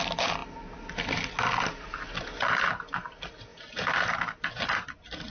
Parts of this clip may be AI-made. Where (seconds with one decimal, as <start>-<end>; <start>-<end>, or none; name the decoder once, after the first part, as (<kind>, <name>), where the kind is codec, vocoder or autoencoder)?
none